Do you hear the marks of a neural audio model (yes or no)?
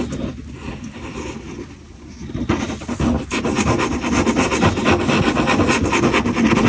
no